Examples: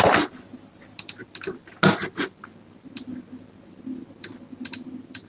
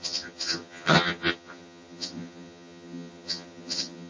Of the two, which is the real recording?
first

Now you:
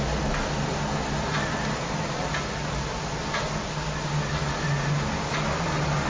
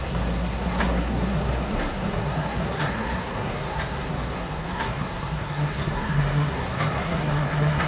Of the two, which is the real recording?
first